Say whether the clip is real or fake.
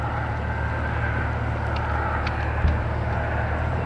real